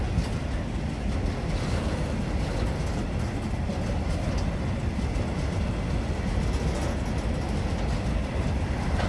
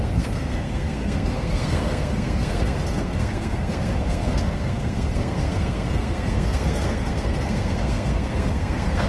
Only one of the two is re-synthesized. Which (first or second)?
second